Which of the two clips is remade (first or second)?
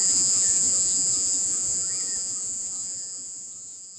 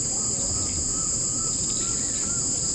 first